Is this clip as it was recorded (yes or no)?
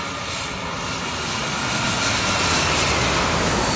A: yes